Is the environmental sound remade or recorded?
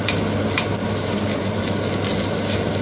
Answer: recorded